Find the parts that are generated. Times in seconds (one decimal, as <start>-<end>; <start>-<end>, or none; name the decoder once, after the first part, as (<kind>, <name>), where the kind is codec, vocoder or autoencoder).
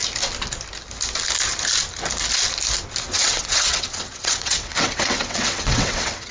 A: 3.0-6.3 (vocoder, WaveNeXt)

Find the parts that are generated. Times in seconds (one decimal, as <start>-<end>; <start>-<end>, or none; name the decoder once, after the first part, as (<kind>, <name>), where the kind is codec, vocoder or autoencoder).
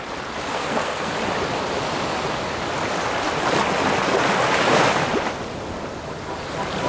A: 0.5-1.1 (codec, SNAC)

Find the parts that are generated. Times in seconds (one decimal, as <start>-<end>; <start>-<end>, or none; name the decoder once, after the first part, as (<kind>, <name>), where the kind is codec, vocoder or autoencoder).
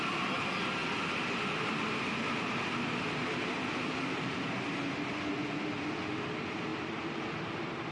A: 6.7-7.9 (vocoder, BigVGAN v2)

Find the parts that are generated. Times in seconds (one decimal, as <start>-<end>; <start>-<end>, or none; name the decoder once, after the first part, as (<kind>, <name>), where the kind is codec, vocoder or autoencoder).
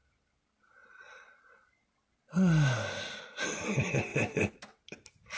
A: none